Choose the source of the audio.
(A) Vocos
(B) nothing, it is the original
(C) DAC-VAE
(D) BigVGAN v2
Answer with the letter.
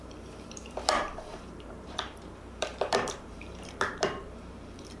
D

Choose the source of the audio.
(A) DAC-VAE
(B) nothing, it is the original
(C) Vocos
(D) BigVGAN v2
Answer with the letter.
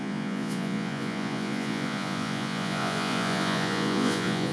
C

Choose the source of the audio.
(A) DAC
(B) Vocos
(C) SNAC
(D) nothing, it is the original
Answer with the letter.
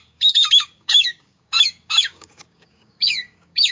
A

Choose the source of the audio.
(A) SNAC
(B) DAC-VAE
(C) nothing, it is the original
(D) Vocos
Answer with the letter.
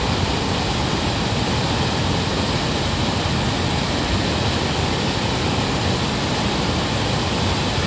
C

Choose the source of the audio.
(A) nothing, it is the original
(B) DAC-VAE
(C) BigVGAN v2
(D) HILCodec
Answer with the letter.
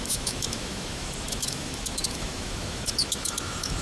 B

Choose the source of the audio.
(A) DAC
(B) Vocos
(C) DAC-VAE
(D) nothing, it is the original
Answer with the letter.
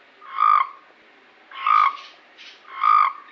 D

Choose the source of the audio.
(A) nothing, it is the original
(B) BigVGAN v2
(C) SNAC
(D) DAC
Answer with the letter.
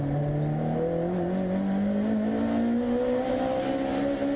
A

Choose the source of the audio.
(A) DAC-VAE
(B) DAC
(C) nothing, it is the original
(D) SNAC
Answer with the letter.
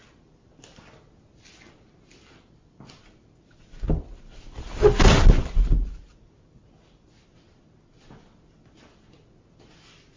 C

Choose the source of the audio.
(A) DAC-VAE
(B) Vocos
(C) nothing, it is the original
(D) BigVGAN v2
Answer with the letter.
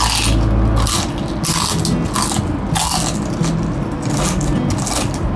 C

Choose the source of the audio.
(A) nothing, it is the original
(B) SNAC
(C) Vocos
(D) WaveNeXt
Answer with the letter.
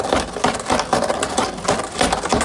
A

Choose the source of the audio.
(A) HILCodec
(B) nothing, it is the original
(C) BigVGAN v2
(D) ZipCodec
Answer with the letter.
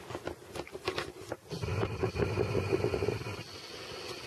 B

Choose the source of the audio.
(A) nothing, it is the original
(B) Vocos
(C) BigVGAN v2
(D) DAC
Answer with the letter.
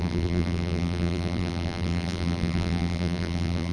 C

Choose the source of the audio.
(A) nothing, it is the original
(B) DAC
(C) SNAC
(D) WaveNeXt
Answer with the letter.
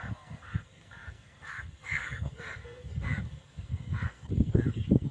C